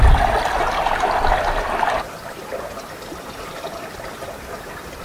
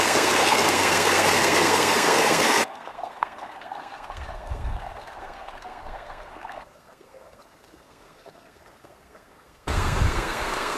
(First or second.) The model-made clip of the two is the second